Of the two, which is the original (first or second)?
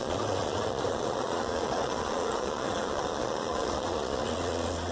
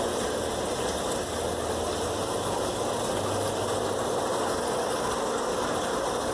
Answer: second